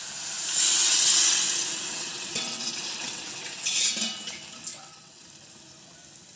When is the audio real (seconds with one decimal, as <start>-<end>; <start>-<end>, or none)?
0.0-0.8; 3.9-4.7; 5.2-6.4